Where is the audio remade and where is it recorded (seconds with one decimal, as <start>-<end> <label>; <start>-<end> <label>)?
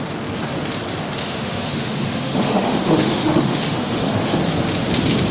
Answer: 0.0-1.2 recorded; 1.2-4.4 remade; 4.4-5.3 recorded